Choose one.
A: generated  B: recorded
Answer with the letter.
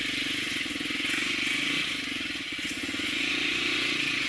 A